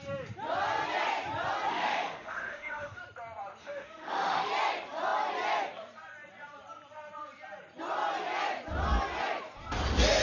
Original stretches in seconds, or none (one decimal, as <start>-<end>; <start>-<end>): 0.0-1.7; 3.0-3.6; 4.5-10.2